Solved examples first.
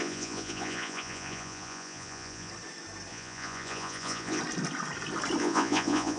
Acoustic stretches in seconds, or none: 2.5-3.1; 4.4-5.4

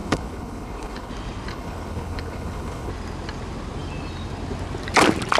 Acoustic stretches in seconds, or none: 1.1-1.5; 2.9-5.4

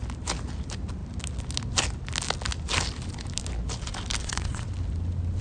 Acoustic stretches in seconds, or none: 0.0-4.2; 4.7-5.4

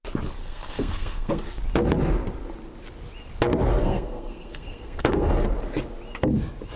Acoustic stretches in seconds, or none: 0.0-0.4; 1.4-3.8; 5.3-6.8

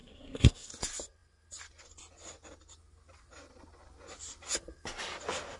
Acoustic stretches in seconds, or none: 0.7-5.6

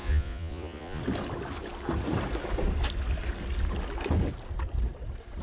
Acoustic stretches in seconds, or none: 1.0-5.4

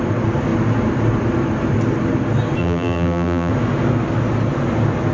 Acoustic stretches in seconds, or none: 0.0-2.6; 3.5-5.1